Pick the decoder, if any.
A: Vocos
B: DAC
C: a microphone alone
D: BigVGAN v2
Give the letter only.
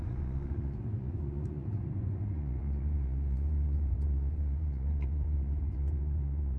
A